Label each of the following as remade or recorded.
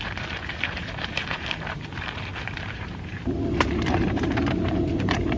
remade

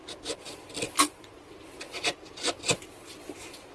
recorded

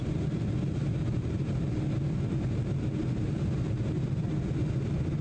recorded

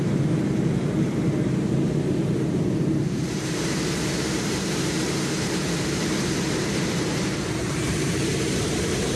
remade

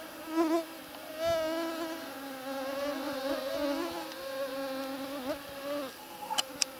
recorded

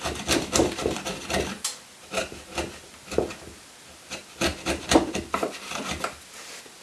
recorded